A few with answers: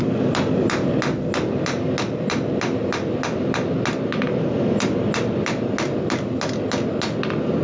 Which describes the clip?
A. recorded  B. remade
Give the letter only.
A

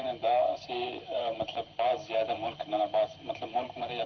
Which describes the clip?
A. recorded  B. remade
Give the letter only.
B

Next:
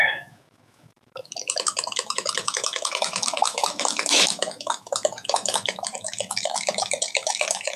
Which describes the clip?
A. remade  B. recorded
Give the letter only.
A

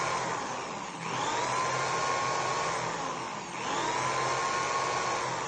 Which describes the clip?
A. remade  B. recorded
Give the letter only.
B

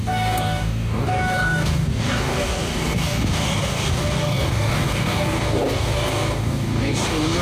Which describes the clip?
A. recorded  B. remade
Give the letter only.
B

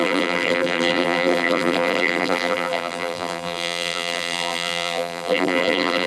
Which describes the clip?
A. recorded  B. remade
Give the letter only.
B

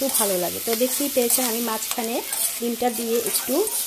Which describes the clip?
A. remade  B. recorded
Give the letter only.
B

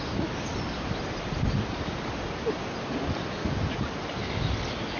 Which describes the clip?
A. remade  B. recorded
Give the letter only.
B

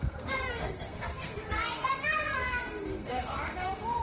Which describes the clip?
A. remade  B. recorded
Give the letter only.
A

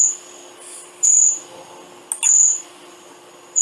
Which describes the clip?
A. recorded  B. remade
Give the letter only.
A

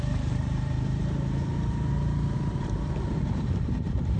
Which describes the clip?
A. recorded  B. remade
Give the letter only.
B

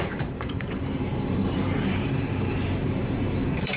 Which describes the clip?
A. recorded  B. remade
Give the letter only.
B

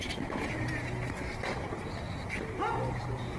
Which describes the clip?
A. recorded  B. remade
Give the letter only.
A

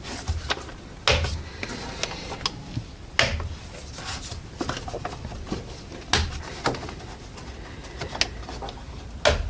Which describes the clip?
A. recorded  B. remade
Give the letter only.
A